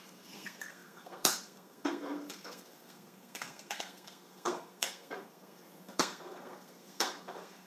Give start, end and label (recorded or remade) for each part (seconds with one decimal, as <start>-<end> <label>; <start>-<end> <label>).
0.0-7.7 remade